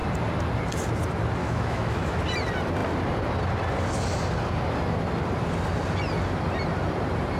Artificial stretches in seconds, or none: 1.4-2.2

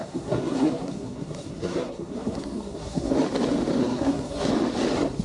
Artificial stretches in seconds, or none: 0.0-3.1; 3.8-4.5